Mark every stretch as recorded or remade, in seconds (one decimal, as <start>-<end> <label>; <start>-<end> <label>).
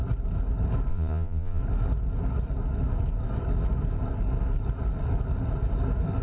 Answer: 0.0-0.9 recorded; 0.9-1.6 remade; 1.6-6.2 recorded